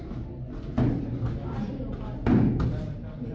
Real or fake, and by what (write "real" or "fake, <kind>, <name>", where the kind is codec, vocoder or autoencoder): real